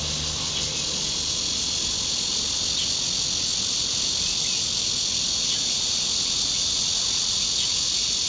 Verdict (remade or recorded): recorded